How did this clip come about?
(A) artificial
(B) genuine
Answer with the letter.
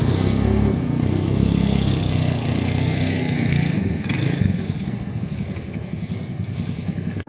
A